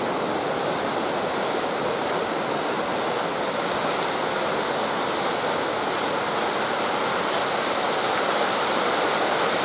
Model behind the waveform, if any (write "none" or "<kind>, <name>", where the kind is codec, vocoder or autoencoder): none